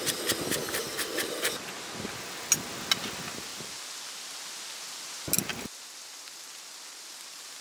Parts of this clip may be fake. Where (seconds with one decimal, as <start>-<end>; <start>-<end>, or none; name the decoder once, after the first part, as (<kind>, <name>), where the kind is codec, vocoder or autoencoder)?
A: 0.6-1.2 (vocoder, BigVGAN v2); 5.5-6.6